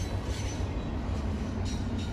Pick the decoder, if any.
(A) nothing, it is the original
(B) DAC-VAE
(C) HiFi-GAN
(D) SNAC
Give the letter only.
A